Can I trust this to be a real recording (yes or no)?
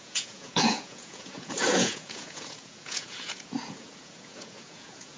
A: no